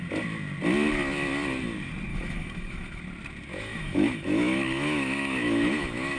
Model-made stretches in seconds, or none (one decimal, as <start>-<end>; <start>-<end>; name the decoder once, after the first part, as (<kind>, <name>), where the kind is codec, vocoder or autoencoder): 2.1-3.0 (autoencoder, DAC-VAE); 3.5-6.2